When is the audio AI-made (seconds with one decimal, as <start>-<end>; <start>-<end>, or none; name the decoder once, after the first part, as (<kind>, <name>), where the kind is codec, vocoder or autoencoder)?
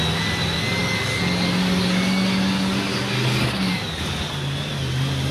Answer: 0.8-4.0 (codec, DAC)